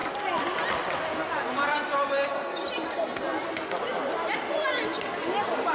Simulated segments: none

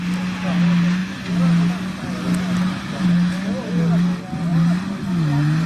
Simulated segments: none

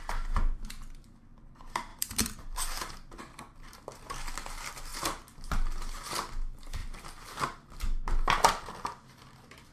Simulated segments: 1.9-3.2 (vocoder, BigVGAN v2); 6.8-7.4

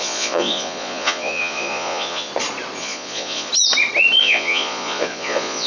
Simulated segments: 0.0-2.3 (vocoder, Vocos); 2.8-3.5; 4.2-5.7